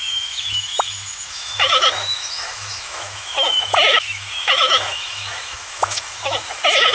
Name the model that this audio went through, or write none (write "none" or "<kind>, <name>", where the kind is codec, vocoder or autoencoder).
autoencoder, DAC-VAE